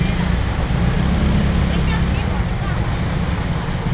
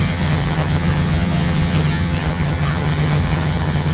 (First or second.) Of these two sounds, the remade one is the second